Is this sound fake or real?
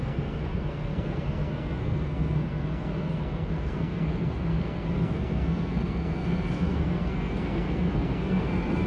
fake